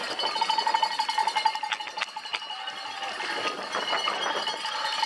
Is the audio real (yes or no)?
yes